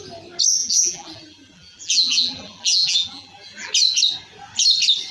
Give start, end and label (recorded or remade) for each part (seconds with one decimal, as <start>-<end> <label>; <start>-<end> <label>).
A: 0.0-0.6 recorded; 0.6-3.7 remade; 3.7-5.1 recorded